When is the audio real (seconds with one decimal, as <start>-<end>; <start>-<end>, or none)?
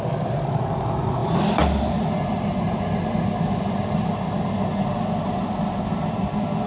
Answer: 0.0-6.7